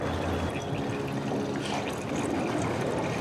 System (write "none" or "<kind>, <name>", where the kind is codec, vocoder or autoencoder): none